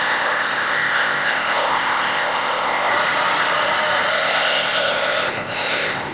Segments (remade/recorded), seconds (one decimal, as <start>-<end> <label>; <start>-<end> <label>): 0.0-2.9 remade; 2.9-4.1 recorded; 4.1-6.1 remade